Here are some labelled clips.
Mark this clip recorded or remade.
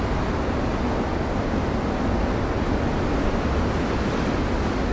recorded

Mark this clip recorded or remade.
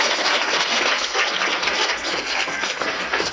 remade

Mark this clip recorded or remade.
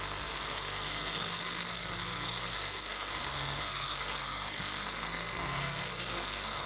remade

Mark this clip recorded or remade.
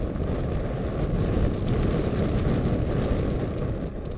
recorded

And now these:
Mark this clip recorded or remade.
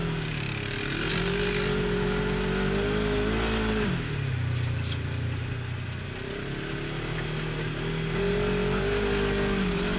recorded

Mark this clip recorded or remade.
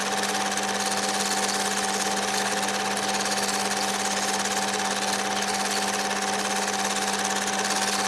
recorded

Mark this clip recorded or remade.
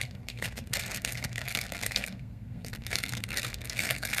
remade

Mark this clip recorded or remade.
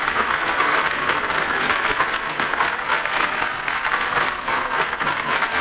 remade